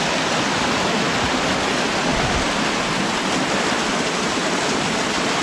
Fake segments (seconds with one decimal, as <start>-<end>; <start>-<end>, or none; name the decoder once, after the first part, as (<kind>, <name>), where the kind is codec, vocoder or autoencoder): none